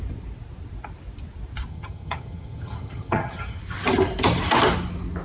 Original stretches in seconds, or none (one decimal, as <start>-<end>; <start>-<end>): 0.0-1.7; 3.6-5.2